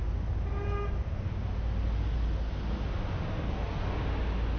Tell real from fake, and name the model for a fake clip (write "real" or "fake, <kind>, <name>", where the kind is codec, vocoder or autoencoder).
real